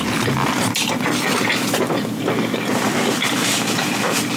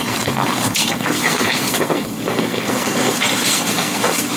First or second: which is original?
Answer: first